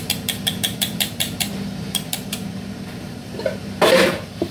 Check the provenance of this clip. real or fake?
fake